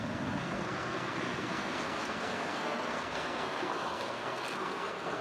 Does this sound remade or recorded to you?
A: remade